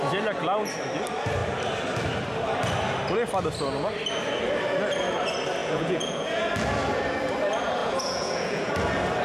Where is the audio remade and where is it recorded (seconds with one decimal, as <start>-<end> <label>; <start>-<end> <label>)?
0.0-5.6 recorded; 5.6-6.5 remade; 6.5-7.8 recorded; 7.8-8.7 remade; 8.7-9.2 recorded